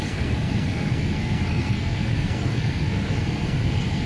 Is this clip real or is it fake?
fake